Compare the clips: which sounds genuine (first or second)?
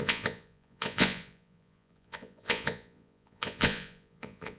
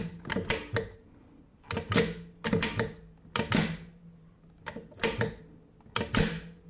second